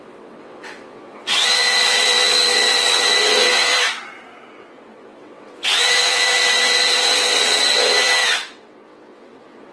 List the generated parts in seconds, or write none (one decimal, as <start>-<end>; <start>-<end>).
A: 0.0-3.7; 4.5-9.7